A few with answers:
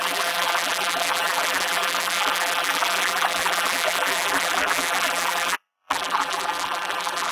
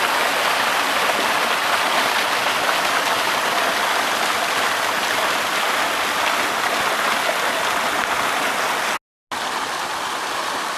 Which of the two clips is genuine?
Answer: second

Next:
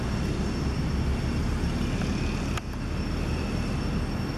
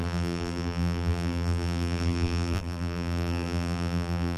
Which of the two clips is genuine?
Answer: first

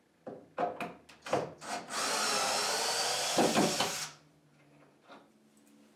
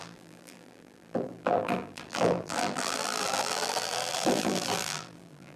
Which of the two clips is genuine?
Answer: first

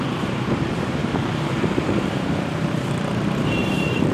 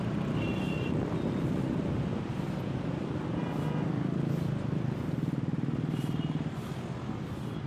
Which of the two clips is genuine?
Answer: second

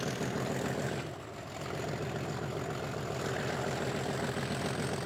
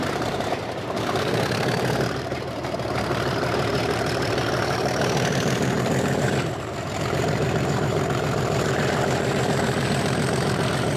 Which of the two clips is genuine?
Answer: first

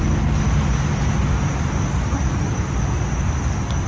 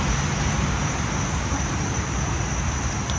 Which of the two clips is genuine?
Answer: first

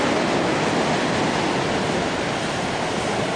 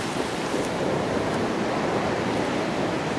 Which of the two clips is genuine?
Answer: first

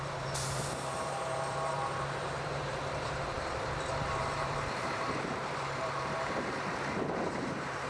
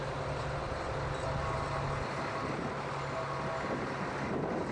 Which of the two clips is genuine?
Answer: second